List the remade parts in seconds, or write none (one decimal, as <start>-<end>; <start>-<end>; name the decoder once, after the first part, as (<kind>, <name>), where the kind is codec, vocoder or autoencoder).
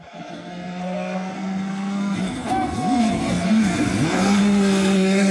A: 0.0-5.3 (codec, SNAC)